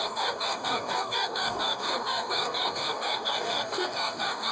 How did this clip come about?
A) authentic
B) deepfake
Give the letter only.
B